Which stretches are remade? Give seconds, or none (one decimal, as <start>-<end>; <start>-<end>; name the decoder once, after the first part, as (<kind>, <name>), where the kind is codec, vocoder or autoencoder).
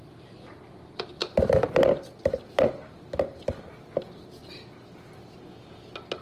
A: 0.0-1.2 (vocoder, BigVGAN v2); 2.7-4.4